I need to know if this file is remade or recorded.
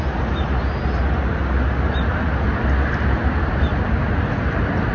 recorded